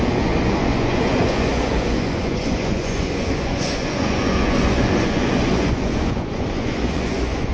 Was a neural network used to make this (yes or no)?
yes